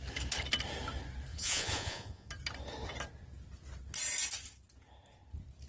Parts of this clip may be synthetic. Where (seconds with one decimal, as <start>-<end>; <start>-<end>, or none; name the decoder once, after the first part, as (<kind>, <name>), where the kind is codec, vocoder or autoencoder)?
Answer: 1.3-2.3 (vocoder, Vocos)